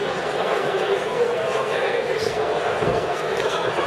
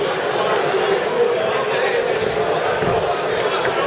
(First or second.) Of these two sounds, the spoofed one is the first